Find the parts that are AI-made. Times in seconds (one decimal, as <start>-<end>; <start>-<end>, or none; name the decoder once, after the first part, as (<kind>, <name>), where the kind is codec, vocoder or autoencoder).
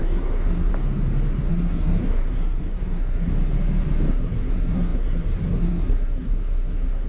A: 0.0-0.7 (codec, SNAC); 1.5-3.3; 4.1-7.1